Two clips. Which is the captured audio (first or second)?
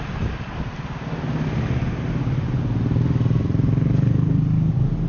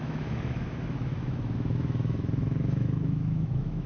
first